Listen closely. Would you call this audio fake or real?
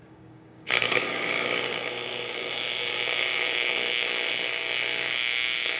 fake